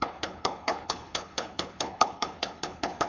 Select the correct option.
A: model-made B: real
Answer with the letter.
A